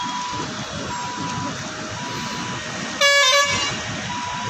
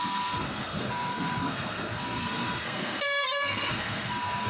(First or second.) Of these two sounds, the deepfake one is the second